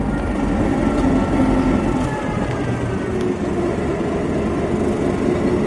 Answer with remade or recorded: recorded